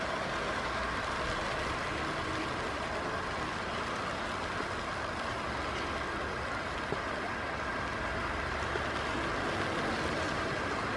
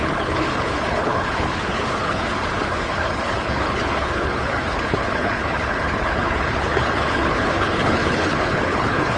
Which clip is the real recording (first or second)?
first